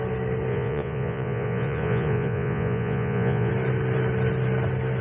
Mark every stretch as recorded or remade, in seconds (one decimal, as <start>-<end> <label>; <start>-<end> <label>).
0.0-0.5 recorded; 0.5-3.5 remade; 3.5-5.0 recorded